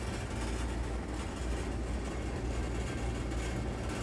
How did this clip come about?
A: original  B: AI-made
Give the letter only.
A